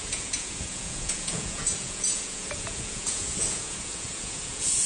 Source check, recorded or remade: remade